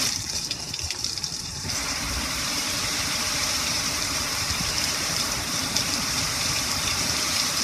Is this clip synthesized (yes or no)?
yes